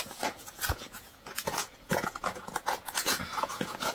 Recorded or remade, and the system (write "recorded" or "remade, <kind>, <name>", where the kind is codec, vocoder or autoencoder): remade, vocoder, Vocos